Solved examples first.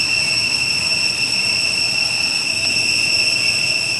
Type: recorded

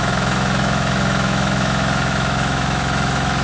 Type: remade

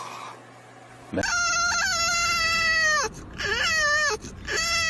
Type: recorded